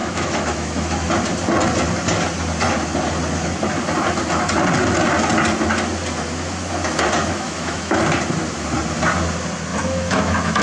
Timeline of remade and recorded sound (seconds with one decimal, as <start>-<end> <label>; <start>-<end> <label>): 0.0-1.1 remade; 1.1-7.2 recorded; 7.2-8.0 remade; 8.0-9.7 recorded; 9.7-10.6 remade